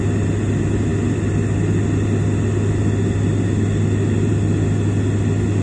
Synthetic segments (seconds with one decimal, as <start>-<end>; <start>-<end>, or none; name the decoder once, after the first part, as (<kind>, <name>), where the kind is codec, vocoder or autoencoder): none